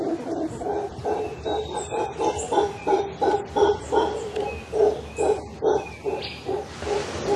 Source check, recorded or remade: recorded